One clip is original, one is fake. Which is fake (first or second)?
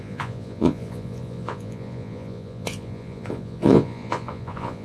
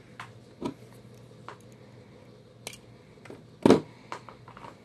first